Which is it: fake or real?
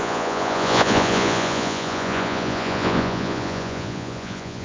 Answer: fake